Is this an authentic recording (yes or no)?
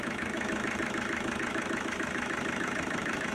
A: no